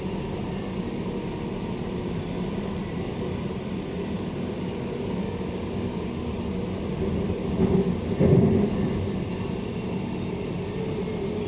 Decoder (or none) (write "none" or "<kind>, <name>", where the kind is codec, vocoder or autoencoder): none